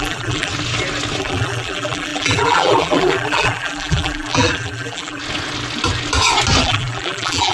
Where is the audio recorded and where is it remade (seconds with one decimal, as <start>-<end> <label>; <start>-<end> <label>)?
0.0-0.5 remade; 0.5-1.2 recorded; 1.2-5.2 remade; 5.2-6.6 recorded; 6.6-7.5 remade